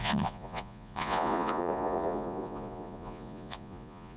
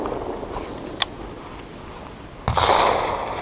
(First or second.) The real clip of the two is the second